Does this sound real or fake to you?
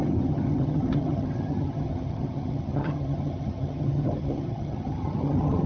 fake